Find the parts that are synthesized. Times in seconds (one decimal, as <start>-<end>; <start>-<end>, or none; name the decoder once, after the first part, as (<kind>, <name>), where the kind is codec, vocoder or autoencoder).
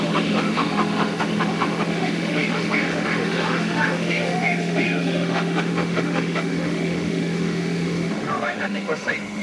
0.0-9.4 (autoencoder, DAC-VAE)